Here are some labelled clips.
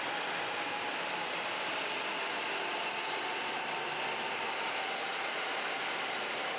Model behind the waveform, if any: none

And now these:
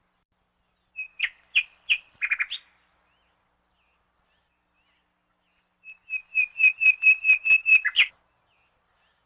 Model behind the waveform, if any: none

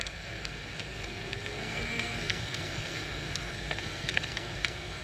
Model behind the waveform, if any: codec, SNAC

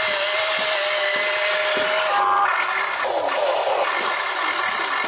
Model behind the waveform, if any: none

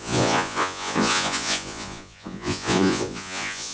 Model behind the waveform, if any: vocoder, Vocos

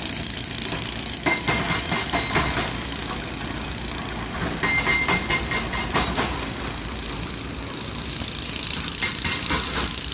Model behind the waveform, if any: none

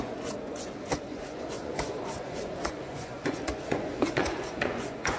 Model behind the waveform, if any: vocoder, Vocos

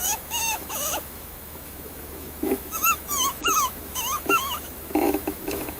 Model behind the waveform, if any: autoencoder, DAC-VAE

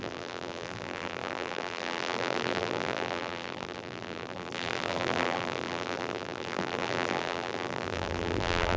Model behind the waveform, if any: vocoder, BigVGAN v2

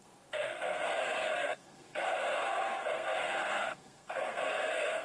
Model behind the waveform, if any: codec, SNAC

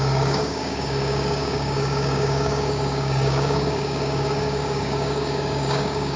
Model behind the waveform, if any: codec, DAC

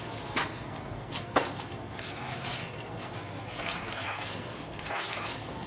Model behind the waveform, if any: codec, SNAC